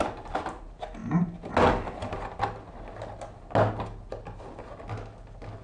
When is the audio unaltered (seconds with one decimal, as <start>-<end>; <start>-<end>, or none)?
0.0-5.6